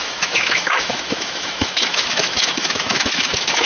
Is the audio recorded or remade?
remade